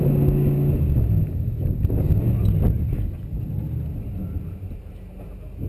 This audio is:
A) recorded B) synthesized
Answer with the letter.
A